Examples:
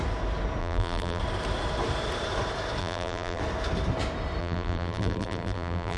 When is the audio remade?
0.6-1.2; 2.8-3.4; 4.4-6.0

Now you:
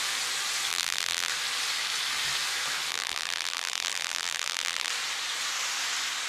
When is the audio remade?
0.7-1.3; 2.9-4.9

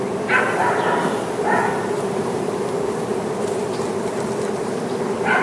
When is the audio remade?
0.6-3.8

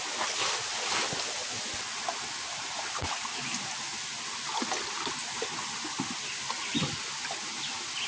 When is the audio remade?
none